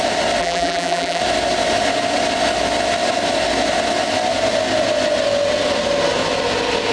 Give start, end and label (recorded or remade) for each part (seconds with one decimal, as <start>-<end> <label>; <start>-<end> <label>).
0.0-0.4 recorded; 0.4-1.2 remade; 1.2-6.9 recorded

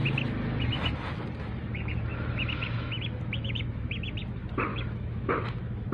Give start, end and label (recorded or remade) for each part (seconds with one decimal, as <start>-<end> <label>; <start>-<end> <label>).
0.0-2.1 recorded; 2.1-3.9 remade; 3.9-4.7 recorded; 4.7-5.9 remade

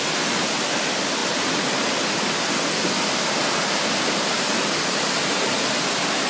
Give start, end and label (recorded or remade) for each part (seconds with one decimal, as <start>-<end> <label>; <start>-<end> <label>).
0.0-6.3 recorded

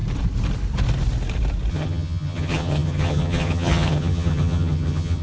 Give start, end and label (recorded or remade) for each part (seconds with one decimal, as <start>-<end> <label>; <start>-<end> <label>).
0.0-1.7 recorded; 1.7-5.2 remade

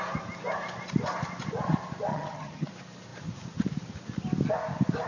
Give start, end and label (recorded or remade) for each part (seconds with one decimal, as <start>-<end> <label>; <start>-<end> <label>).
0.0-2.1 recorded; 2.1-2.7 remade; 2.7-5.1 recorded

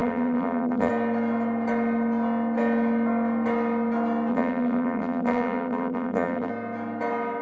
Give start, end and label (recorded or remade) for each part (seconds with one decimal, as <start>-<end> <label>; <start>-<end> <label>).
0.0-0.9 remade; 0.9-4.3 recorded; 4.3-6.5 remade; 6.5-7.4 recorded

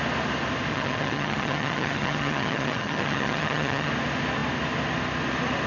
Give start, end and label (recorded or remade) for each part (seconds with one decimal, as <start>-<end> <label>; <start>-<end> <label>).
0.0-0.7 recorded; 0.7-3.9 remade; 3.9-5.7 recorded

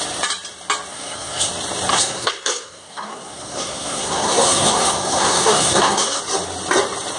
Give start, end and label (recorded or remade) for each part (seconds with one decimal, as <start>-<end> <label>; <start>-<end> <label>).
0.0-0.9 recorded; 0.9-1.5 remade; 1.5-1.9 recorded; 1.9-6.2 remade; 6.2-7.2 recorded